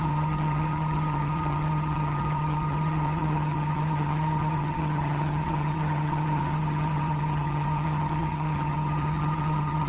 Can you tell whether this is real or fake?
fake